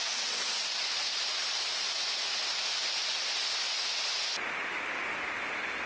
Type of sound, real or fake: real